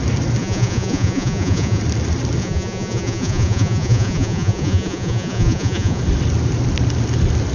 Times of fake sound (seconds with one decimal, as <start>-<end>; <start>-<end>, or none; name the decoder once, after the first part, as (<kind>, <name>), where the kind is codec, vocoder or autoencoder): 0.4-1.8 (vocoder, Vocos); 2.4-6.0